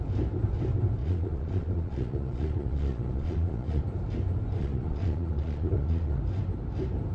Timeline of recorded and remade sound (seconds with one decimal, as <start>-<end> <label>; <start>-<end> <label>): 0.0-1.0 recorded; 1.0-3.8 remade; 3.8-4.6 recorded; 4.6-6.2 remade; 6.2-7.1 recorded